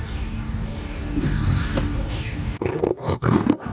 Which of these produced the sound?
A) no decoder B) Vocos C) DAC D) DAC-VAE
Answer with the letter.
C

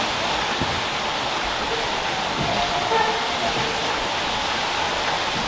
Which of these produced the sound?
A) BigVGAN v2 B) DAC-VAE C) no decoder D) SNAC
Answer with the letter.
C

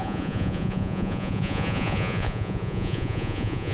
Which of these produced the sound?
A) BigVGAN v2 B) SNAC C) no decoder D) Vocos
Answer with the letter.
D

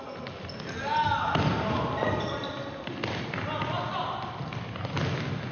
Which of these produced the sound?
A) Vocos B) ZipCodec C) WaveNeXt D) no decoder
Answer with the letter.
D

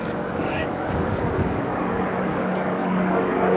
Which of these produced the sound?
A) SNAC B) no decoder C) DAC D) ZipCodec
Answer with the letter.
C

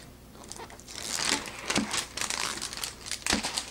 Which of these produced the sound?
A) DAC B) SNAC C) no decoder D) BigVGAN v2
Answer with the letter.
C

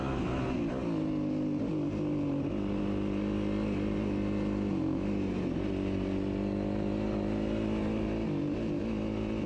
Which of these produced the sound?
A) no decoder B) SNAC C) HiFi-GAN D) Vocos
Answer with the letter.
A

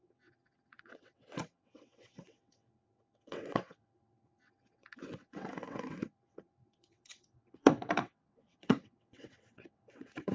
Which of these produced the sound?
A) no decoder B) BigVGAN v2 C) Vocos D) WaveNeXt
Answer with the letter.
D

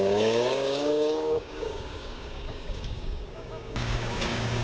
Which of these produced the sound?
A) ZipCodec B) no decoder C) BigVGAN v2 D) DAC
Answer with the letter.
D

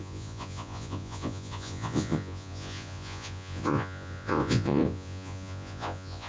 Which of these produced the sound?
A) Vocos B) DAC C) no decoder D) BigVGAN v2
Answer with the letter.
A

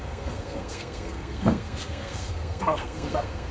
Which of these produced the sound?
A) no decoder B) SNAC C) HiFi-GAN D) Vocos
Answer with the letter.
B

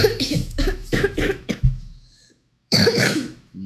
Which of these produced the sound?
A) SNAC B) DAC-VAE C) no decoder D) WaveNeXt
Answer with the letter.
B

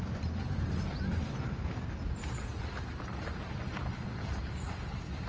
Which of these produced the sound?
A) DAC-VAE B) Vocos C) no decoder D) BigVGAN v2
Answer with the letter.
D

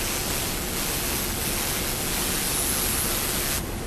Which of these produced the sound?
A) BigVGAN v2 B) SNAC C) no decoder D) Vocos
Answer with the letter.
C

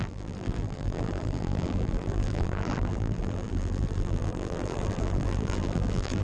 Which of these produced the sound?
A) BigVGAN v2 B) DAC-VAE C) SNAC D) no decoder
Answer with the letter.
A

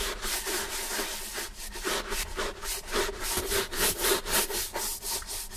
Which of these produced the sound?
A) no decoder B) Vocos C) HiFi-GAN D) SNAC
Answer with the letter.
A